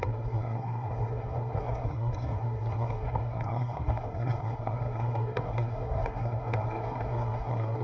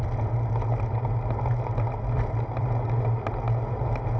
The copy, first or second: first